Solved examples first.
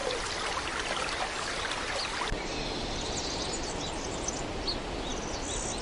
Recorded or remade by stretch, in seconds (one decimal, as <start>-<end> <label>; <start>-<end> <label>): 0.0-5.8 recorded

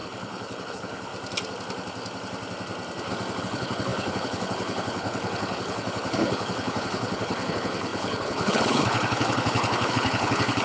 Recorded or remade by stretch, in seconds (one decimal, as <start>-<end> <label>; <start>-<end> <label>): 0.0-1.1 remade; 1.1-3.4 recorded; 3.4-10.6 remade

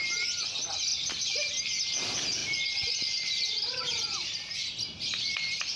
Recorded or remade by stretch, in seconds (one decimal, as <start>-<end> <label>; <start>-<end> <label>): 0.0-2.4 recorded; 2.4-3.4 remade; 3.4-4.6 recorded; 4.6-5.3 remade; 5.3-5.8 recorded

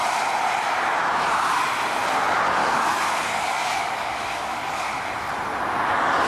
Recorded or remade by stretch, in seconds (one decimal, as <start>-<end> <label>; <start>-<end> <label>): 0.0-2.6 recorded; 2.6-5.1 remade; 5.1-6.3 recorded

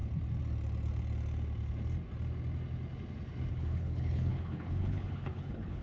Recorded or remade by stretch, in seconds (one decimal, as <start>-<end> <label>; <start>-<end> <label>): 0.0-3.5 recorded; 3.5-5.8 remade

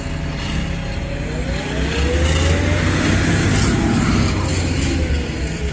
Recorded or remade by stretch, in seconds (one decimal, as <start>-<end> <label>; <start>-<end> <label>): 0.0-4.5 recorded; 4.5-5.1 remade; 5.1-5.7 recorded